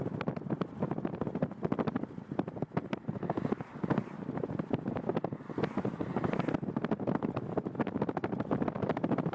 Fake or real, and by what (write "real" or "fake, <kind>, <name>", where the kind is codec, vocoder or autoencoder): real